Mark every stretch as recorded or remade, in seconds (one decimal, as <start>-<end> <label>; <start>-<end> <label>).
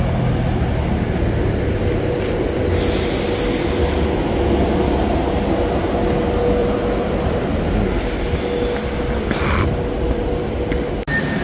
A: 0.0-6.6 recorded; 6.6-7.3 remade; 7.3-11.4 recorded